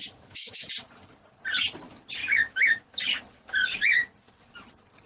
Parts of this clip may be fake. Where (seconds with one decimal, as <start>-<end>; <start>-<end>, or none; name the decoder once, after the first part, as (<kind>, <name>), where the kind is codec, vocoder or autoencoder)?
0.0-0.7 (autoencoder, DAC-VAE); 2.2-2.9